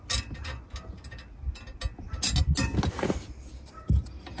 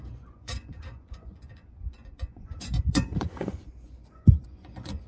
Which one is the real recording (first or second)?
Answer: first